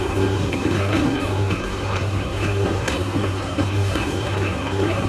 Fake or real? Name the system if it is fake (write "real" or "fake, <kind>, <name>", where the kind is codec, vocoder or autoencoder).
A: fake, codec, SNAC